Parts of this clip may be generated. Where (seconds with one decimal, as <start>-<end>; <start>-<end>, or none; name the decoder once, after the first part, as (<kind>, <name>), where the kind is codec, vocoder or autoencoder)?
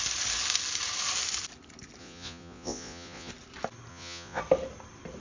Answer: 2.0-3.3 (vocoder, Vocos); 3.9-4.4